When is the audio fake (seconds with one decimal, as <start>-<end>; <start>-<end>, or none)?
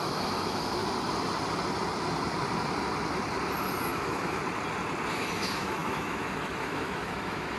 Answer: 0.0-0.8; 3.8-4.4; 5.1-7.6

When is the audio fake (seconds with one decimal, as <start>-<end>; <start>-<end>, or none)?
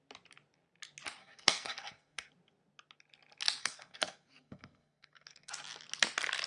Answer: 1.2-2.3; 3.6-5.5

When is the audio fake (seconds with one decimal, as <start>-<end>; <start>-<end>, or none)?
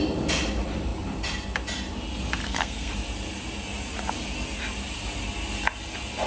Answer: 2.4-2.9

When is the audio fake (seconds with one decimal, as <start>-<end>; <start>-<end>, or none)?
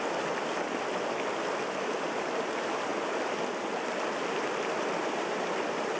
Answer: none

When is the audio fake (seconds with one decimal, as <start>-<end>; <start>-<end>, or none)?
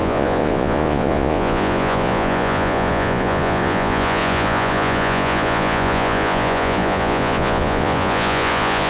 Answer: 0.0-8.9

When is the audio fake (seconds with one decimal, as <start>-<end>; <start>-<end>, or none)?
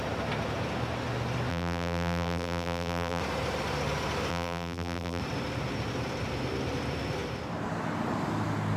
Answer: 1.5-3.2; 4.3-5.2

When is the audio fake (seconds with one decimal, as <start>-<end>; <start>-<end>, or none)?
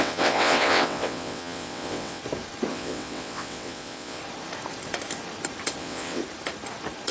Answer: 0.0-2.2; 2.7-4.2; 5.8-6.2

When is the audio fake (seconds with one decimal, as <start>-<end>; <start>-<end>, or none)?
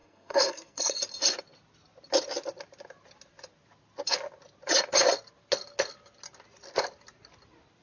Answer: 0.0-1.0